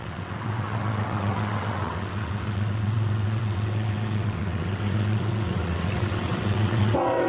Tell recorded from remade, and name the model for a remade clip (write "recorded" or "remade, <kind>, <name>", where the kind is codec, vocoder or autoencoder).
remade, vocoder, WaveNeXt